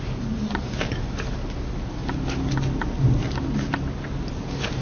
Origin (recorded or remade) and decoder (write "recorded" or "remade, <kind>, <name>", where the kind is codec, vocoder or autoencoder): recorded